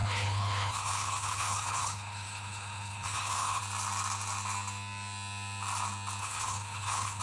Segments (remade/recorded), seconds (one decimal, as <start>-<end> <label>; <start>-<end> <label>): 0.0-3.6 remade; 3.6-6.2 recorded; 6.2-7.2 remade